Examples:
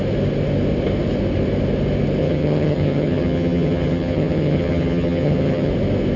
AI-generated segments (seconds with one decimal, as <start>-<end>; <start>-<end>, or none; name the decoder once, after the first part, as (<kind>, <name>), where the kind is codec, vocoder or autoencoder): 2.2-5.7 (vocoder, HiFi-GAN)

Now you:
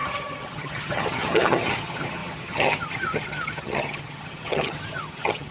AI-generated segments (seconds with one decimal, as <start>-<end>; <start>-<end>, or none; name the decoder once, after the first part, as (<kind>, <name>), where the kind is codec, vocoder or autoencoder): 0.0-5.5 (vocoder, HiFi-GAN)

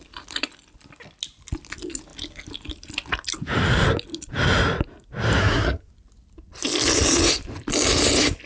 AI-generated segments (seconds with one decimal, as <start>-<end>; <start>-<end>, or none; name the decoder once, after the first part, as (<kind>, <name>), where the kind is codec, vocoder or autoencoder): 5.4-5.9 (codec, SNAC)

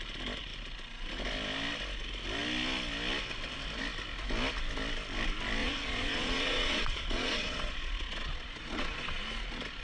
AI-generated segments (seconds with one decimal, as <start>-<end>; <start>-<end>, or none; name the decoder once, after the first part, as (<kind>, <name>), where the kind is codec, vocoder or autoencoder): 5.6-9.2 (vocoder, Vocos)

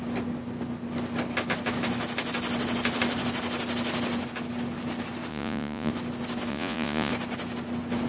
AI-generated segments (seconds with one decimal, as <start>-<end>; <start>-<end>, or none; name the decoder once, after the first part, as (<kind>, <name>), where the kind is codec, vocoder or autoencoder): 5.3-5.9 (vocoder, Vocos); 6.5-7.1

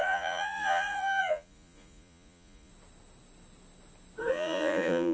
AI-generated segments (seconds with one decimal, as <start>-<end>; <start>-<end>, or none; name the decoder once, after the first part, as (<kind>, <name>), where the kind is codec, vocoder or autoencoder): 0.0-2.7 (vocoder, Vocos); 4.3-5.1

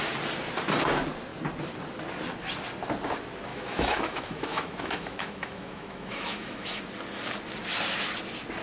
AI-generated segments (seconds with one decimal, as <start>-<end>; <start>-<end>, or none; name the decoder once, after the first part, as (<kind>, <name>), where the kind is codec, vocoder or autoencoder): 3.5-6.8 (autoencoder, DAC-VAE)